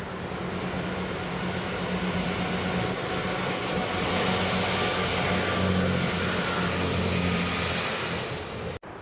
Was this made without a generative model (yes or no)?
yes